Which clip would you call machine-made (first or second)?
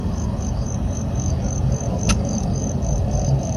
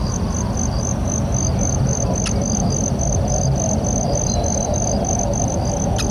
first